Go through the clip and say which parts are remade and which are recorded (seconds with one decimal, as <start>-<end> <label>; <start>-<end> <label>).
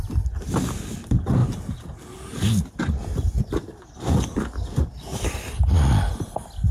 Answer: 0.0-6.7 recorded